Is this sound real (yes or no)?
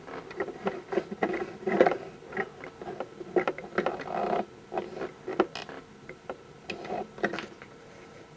yes